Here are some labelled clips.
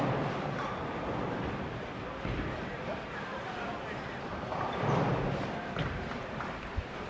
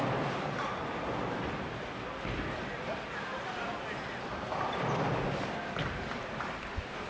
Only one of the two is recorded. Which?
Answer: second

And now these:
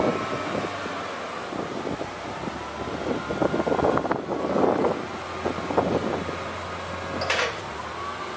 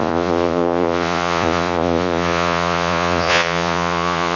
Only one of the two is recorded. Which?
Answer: first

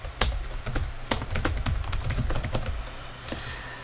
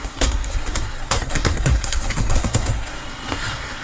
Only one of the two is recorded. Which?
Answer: first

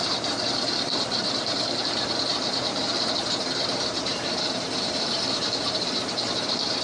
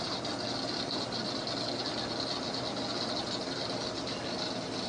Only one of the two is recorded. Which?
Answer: second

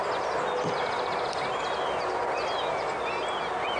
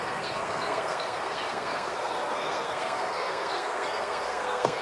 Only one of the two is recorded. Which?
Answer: first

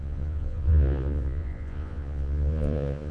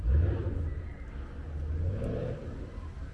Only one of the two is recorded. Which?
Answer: second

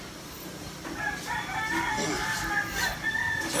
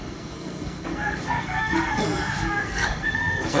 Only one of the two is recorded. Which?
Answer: first